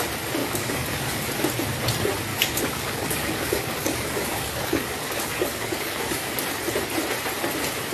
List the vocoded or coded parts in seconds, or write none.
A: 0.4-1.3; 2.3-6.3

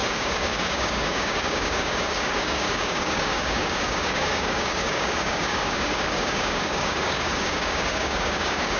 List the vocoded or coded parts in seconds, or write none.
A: 0.0-8.8

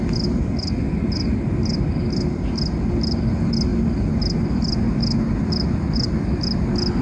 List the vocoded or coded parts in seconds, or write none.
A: none

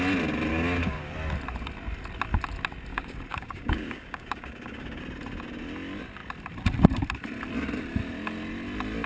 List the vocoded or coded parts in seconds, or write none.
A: 0.5-1.1; 2.9-5.0

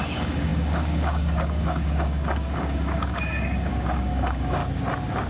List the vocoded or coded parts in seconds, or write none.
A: 0.0-4.6